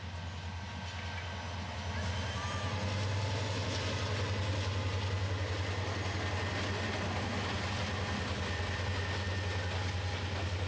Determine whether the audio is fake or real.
real